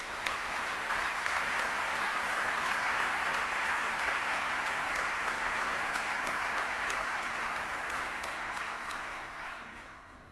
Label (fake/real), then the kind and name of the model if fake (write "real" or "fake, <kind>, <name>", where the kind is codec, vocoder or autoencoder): fake, codec, SNAC